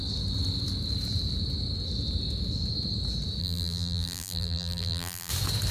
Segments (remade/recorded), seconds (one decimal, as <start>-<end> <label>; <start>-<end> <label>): 0.0-3.4 recorded; 3.4-5.3 remade; 5.3-5.7 recorded